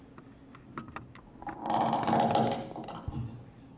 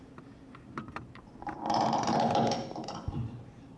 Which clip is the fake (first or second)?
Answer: second